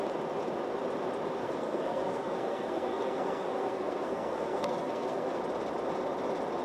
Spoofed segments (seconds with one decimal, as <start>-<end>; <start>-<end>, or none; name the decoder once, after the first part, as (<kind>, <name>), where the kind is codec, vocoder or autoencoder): 1.4-5.4 (codec, SNAC)

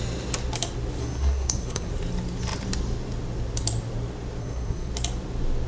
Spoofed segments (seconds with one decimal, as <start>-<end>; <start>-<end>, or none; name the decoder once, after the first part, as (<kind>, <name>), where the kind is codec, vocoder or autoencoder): 1.0-1.9 (codec, SNAC); 4.4-4.9

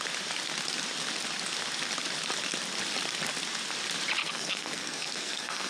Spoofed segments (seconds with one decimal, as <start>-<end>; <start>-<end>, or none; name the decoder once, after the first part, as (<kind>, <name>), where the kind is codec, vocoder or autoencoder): 4.2-5.7 (codec, SNAC)

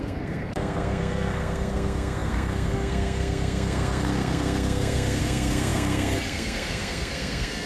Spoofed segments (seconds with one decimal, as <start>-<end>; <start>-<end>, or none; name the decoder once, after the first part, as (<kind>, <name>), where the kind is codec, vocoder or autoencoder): 0.0-7.7 (codec, SNAC)

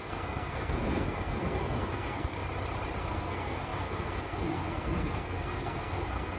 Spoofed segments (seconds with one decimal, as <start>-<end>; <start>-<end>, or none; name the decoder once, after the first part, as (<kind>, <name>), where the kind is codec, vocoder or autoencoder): 0.0-2.4 (codec, SNAC); 3.0-6.4

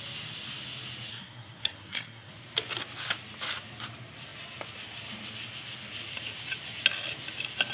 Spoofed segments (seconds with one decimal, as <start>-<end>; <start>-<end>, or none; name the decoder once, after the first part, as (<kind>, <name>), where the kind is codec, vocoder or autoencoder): 1.1-2.3 (codec, SNAC)

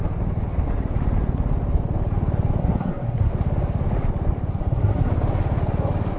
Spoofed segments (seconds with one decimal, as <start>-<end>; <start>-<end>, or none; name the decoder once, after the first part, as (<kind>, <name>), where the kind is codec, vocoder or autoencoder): 2.6-3.3 (codec, SNAC); 4.6-5.1